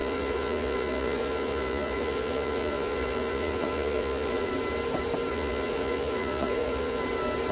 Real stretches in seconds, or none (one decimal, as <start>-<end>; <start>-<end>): 4.5-5.3; 7.0-7.5